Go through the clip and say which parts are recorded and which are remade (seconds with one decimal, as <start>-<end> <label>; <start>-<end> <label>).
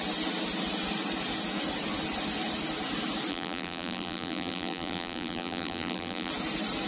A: 0.0-3.3 recorded; 3.3-6.3 remade; 6.3-6.9 recorded